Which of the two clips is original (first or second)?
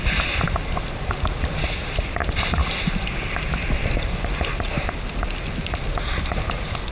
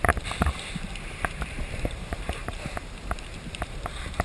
first